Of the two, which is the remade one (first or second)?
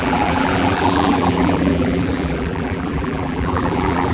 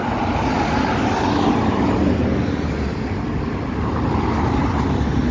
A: first